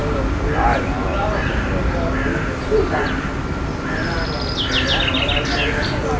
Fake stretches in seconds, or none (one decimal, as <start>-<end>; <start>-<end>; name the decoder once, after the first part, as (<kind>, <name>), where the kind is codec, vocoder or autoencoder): none